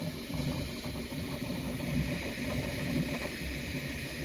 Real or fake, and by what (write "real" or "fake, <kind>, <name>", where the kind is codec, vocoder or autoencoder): fake, vocoder, BigVGAN v2